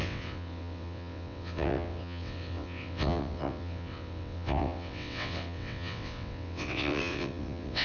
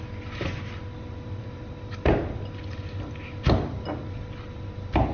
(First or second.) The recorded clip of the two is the second